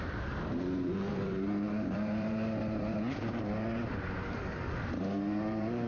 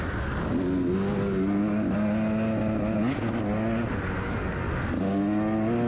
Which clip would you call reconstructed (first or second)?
first